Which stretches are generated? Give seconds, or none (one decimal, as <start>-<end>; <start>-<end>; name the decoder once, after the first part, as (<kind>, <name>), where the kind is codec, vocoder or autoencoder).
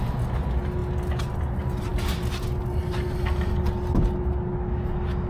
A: none